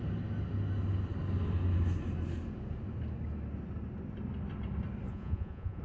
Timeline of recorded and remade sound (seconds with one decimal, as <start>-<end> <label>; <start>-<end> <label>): 0.0-5.1 recorded; 5.1-5.8 remade